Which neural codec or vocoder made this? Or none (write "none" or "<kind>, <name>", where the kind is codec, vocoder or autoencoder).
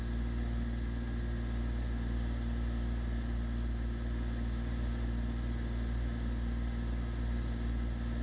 none